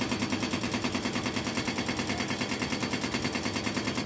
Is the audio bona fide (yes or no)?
yes